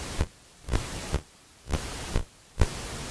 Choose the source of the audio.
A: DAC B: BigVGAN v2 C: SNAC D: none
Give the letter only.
B